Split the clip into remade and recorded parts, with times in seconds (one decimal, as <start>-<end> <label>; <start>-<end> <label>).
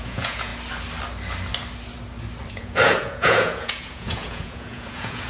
0.0-0.5 remade; 0.5-2.5 recorded; 2.5-5.3 remade